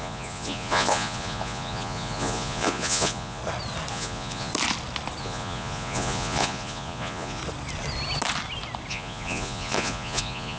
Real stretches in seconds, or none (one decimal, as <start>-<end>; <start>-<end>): 3.4-3.9; 4.5-5.2; 7.4-8.9